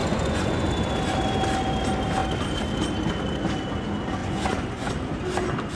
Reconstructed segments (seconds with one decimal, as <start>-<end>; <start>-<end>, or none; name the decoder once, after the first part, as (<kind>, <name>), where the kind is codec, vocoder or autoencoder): 0.0-0.7 (vocoder, Vocos); 4.2-4.9